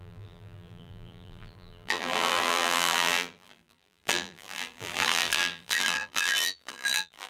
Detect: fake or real fake